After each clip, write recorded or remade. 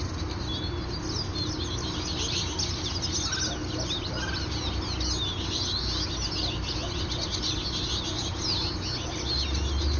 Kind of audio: recorded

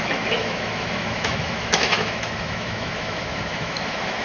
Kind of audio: remade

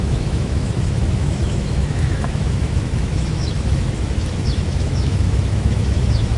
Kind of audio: remade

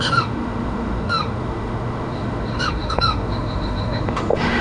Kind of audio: remade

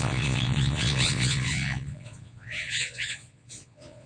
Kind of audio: remade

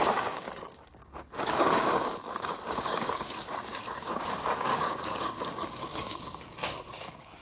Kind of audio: remade